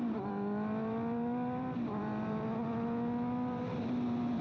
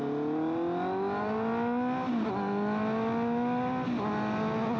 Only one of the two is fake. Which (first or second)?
first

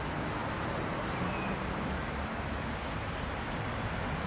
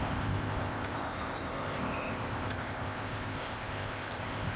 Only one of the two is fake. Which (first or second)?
second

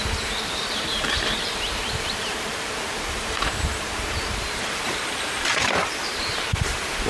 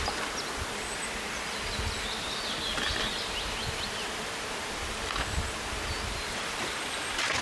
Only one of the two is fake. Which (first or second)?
first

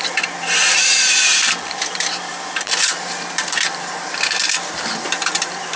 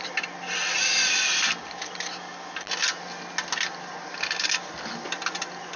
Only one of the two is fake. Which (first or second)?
first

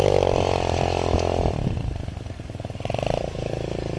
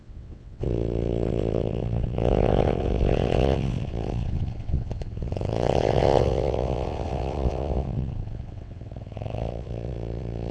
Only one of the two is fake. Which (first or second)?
second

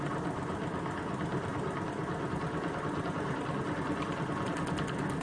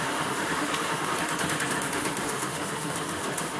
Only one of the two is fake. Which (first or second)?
second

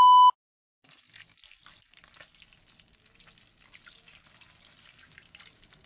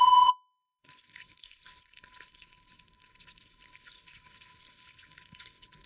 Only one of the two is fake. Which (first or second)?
second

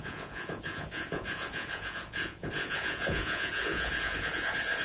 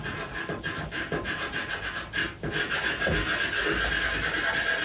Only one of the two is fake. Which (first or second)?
first